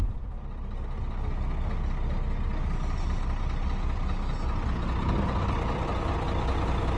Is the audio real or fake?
real